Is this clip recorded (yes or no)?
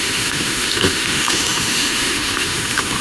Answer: no